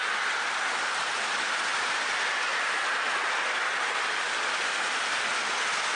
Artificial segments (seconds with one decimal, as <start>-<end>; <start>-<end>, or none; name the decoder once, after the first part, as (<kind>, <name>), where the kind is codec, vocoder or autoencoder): none